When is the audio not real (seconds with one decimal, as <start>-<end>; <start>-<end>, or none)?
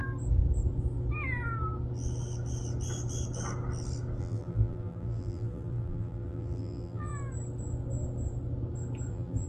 4.2-7.1; 9.1-9.5